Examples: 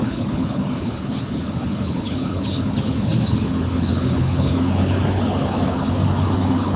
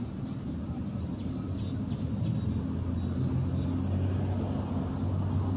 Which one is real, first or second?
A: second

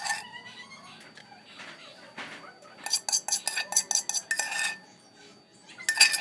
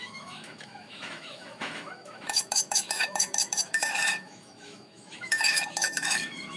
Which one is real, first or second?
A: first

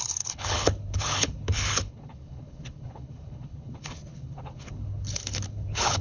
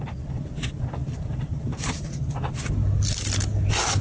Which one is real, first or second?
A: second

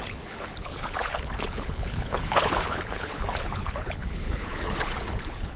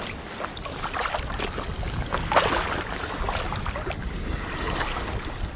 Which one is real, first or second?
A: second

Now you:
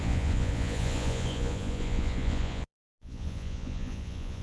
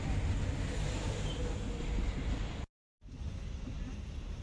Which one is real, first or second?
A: second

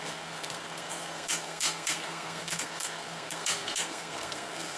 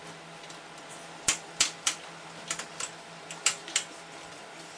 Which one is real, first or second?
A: second